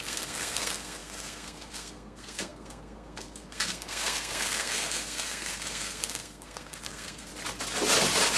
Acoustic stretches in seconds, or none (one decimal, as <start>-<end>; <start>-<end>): 7.3-8.4